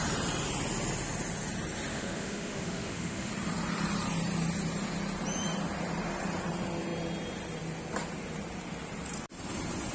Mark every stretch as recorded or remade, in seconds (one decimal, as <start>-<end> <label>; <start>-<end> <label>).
0.0-1.9 recorded; 1.9-3.3 remade; 3.3-9.9 recorded